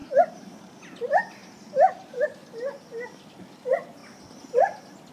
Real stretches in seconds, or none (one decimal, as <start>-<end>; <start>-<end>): 0.6-5.1